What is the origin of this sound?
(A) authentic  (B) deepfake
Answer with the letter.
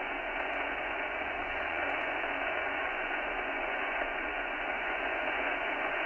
B